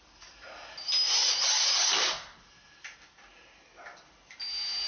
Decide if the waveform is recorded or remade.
recorded